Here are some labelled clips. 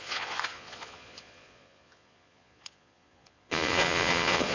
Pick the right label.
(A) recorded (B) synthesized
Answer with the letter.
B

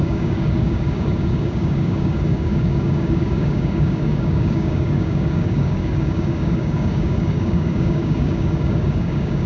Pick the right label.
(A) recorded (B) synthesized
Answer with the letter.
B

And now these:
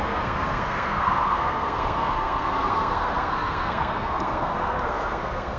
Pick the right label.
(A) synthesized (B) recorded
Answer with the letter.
A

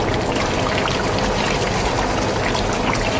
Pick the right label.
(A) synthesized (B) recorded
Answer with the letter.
B